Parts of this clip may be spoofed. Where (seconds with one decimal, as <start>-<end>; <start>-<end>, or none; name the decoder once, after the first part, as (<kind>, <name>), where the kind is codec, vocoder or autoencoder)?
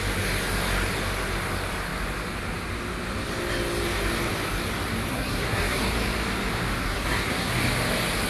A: 5.1-5.8 (codec, SNAC); 6.8-7.5